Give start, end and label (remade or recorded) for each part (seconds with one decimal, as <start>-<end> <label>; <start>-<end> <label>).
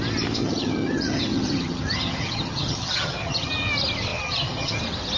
0.0-0.4 recorded; 0.4-3.5 remade; 3.5-4.1 recorded; 4.1-4.8 remade; 4.8-5.2 recorded